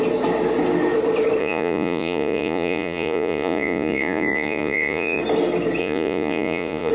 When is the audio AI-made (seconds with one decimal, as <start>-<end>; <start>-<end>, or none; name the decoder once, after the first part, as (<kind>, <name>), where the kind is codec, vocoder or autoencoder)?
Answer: 1.4-5.2 (vocoder, Vocos); 5.8-6.9